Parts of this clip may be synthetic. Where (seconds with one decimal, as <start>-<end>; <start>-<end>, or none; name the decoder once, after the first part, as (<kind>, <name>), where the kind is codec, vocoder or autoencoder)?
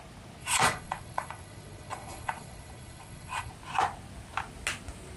0.4-3.5 (vocoder, Vocos)